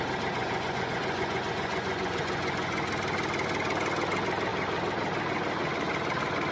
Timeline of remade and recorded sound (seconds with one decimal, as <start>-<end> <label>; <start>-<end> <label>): 0.0-0.4 recorded; 0.4-2.9 remade; 2.9-6.5 recorded